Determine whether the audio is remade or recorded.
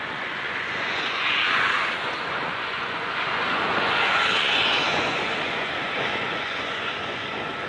remade